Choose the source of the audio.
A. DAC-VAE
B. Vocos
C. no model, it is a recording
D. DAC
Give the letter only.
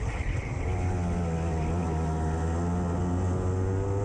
C